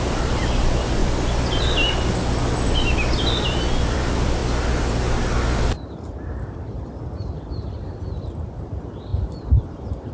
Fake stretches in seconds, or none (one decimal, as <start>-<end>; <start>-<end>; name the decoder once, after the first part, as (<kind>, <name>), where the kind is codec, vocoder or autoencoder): 0.0-1.0 (vocoder, BigVGAN v2); 3.2-4.4; 7.5-10.1